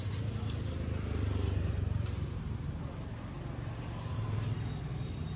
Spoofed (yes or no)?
no